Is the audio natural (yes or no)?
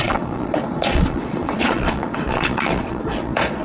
no